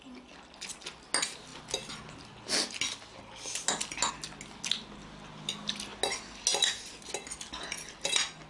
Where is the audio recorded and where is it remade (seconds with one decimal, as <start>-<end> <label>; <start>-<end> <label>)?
0.0-8.5 recorded